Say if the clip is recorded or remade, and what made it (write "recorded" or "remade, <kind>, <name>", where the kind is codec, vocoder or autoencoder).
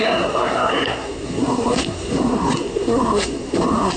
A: remade, codec, SNAC